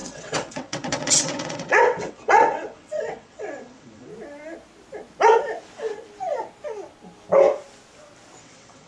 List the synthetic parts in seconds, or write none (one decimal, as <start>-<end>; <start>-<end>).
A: 0.0-4.1; 8.4-8.9